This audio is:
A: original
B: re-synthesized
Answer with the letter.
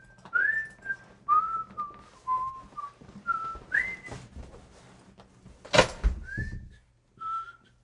A